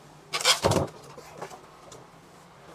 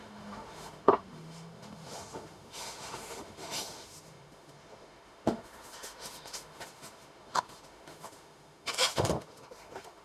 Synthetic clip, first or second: second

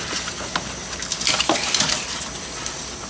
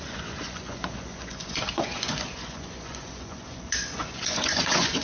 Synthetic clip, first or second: second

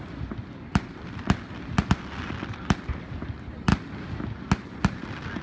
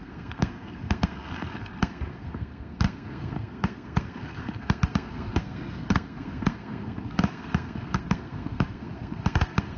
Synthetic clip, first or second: second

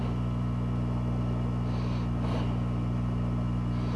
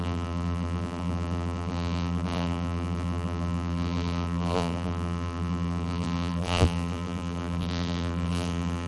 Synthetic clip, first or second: second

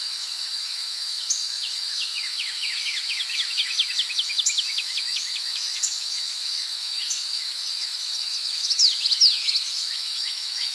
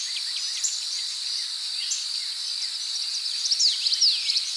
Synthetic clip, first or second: first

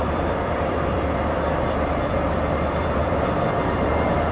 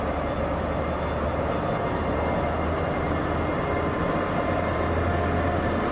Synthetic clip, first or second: first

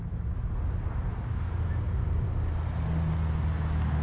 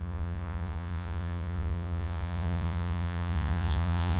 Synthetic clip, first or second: second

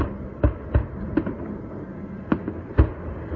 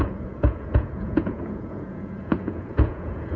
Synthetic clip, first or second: second